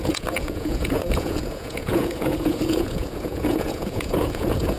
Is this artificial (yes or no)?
yes